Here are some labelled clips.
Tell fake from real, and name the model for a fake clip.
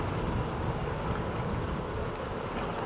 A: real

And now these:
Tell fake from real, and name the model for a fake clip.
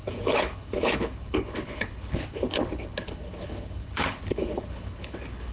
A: fake, codec, HILCodec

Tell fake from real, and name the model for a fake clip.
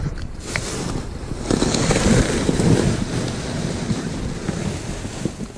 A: real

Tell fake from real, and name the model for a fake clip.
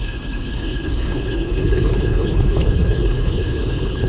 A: fake, codec, HILCodec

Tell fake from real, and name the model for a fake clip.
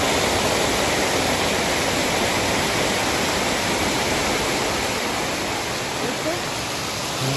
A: real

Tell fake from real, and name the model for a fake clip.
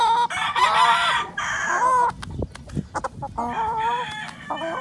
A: real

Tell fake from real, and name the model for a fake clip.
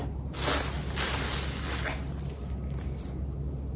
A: real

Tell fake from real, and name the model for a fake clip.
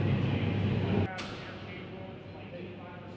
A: real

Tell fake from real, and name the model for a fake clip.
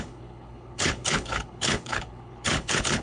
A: fake, codec, HILCodec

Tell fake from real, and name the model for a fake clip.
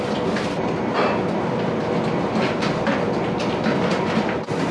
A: real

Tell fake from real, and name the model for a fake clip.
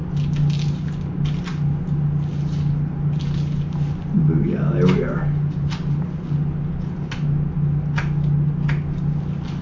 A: real